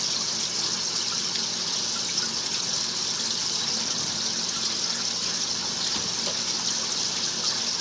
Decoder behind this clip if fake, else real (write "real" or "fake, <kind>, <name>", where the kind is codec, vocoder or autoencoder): real